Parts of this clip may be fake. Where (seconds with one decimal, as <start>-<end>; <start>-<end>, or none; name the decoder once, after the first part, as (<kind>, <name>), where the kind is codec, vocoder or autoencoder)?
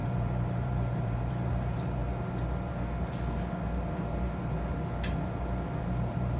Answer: 0.0-2.0 (vocoder, BigVGAN v2); 5.8-6.4